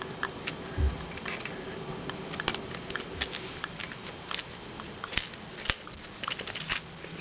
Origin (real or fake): real